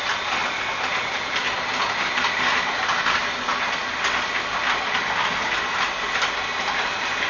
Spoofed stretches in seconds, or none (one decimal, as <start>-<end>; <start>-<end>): none